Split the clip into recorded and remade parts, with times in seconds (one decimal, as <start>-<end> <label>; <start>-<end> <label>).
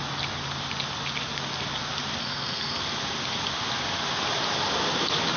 0.0-2.2 recorded; 2.2-2.8 remade; 2.8-5.4 recorded